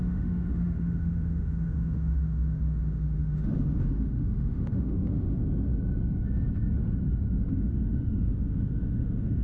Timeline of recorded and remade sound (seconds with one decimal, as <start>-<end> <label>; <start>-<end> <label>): 0.0-5.4 remade; 5.4-7.5 recorded; 7.5-9.4 remade

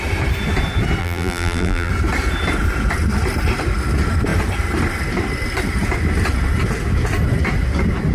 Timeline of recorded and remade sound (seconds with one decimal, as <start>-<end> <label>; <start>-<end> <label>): 0.0-1.0 recorded; 1.0-1.9 remade; 1.9-8.1 recorded